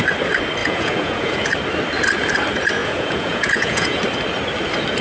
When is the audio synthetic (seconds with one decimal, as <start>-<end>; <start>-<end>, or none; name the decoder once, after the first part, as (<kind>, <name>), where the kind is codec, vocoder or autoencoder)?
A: 0.6-1.4 (vocoder, Vocos); 2.8-4.0